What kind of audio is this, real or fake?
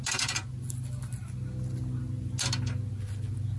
real